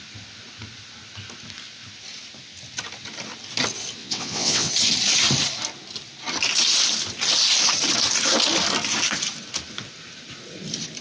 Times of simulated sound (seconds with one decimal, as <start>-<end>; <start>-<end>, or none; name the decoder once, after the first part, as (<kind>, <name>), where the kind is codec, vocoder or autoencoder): 4.0-4.7 (vocoder, WaveNeXt)